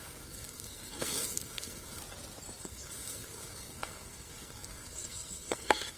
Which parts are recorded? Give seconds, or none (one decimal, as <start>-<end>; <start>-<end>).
2.0-2.6